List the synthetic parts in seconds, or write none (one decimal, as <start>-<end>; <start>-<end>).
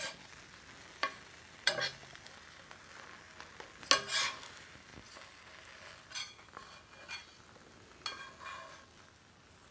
0.8-2.6